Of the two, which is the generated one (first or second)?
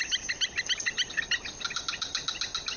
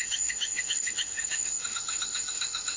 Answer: second